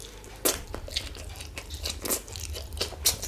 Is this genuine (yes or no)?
yes